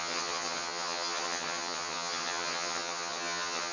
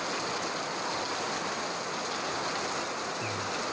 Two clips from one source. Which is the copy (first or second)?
first